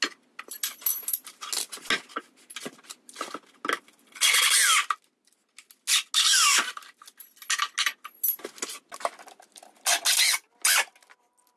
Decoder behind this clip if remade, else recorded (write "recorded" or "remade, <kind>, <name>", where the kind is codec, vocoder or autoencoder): recorded